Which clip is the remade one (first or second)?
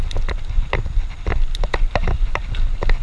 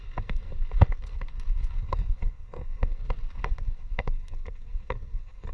second